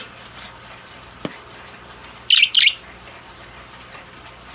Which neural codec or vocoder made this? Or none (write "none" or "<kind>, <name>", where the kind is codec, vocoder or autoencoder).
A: none